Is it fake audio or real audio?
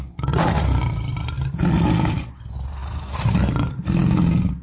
real